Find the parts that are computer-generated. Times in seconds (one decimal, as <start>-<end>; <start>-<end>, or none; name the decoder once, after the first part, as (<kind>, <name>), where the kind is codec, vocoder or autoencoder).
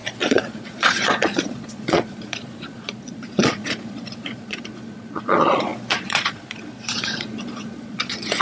0.0-8.4 (vocoder, Vocos)